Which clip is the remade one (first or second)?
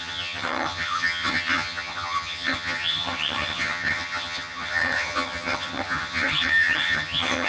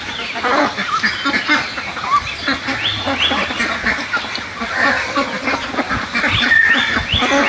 first